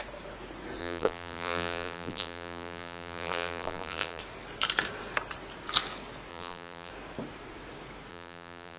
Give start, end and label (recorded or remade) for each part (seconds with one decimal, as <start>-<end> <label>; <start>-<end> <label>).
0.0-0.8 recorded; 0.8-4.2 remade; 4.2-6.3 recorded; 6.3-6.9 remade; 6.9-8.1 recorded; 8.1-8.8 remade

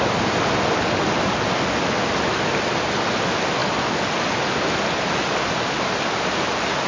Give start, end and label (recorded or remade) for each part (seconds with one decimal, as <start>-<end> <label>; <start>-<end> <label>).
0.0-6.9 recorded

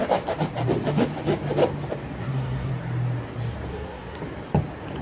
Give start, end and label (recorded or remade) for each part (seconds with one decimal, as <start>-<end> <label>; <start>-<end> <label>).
0.0-2.2 recorded; 2.2-2.7 remade; 2.7-3.7 recorded; 3.7-4.2 remade; 4.2-5.0 recorded

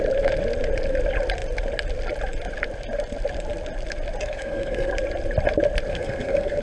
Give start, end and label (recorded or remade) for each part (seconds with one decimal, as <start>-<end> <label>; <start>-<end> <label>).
0.0-4.2 recorded; 4.2-4.9 remade; 4.9-5.9 recorded; 5.9-6.6 remade

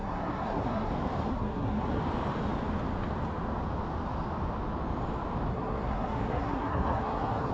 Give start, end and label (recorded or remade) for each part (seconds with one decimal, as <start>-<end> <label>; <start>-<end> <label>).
0.0-0.9 remade; 0.9-1.3 recorded; 1.3-2.0 remade; 2.0-5.5 recorded; 5.5-7.5 remade